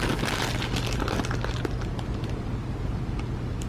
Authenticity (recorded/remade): recorded